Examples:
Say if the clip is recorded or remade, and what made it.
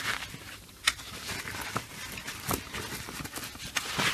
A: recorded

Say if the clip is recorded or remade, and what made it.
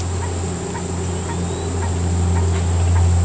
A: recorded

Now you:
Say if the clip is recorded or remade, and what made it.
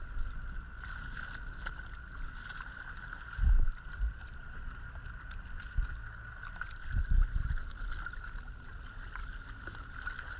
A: recorded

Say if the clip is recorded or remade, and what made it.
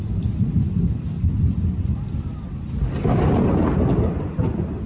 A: recorded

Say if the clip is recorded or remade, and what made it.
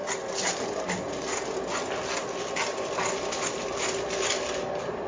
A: recorded